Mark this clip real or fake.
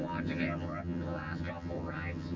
fake